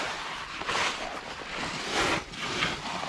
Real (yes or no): no